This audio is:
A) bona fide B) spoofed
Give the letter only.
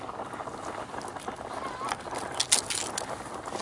A